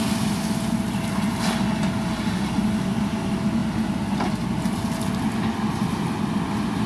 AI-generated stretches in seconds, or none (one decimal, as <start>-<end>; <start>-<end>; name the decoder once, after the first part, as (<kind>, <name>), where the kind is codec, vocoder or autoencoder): none